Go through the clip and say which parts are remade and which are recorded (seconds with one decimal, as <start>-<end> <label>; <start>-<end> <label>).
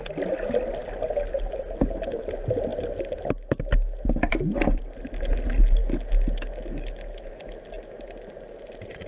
0.0-9.1 recorded